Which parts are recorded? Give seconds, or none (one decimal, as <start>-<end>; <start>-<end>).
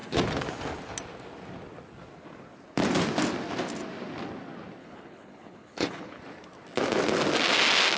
0.0-4.8; 6.2-8.0